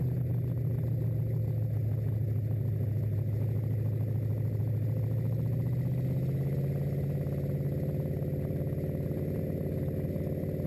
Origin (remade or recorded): recorded